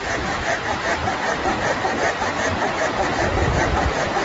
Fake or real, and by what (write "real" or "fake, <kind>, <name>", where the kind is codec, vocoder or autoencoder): real